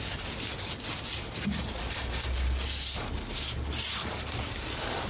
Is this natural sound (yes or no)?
yes